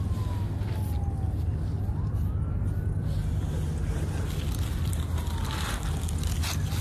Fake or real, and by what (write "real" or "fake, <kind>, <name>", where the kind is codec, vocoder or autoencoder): real